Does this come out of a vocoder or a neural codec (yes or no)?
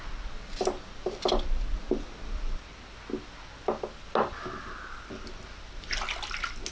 no